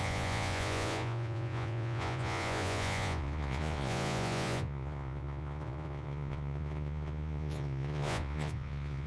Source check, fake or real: fake